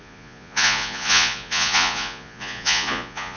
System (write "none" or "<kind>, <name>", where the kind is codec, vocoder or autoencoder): vocoder, Vocos